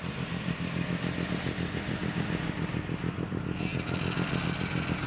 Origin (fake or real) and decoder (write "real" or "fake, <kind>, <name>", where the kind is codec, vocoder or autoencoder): real